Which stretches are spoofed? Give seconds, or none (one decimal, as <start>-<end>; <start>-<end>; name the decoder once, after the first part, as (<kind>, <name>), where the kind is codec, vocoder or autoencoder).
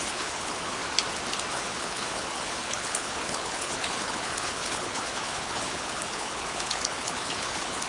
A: 0.0-0.8 (codec, HILCodec); 1.5-7.9